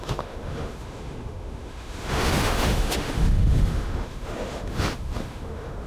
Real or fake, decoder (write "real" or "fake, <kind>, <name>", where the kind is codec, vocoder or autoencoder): fake, autoencoder, DAC-VAE